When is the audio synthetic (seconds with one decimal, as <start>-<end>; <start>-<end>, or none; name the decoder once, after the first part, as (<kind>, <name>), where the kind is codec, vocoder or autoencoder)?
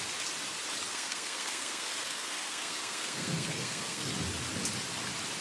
0.9-4.1 (codec, SNAC)